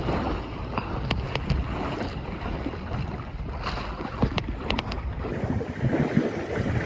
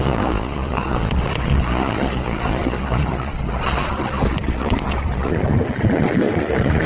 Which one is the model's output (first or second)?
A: second